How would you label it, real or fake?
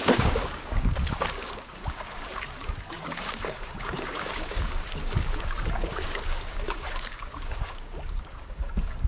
fake